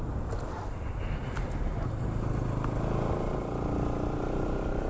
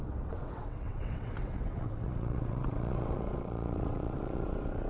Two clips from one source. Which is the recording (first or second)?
first